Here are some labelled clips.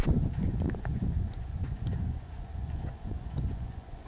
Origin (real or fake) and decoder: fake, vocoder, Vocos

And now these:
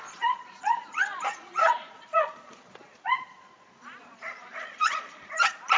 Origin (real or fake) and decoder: fake, vocoder, Vocos